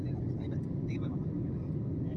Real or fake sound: real